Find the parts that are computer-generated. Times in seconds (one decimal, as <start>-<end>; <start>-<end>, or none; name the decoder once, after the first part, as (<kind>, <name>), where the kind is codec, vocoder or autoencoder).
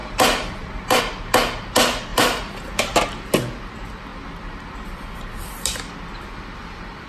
0.0-1.0 (vocoder, BigVGAN v2); 2.1-2.8